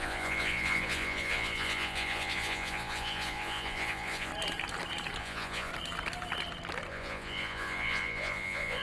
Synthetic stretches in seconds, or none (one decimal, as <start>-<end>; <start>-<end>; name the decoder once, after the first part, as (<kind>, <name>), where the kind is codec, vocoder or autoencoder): 0.0-4.3 (vocoder, Vocos); 5.2-5.7; 6.9-8.8